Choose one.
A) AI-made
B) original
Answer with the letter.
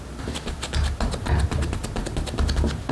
B